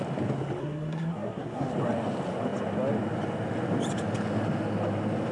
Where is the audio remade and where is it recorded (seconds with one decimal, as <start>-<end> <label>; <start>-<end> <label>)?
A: 0.0-0.6 recorded; 0.6-1.7 remade; 1.7-5.3 recorded